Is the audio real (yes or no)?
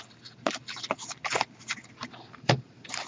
yes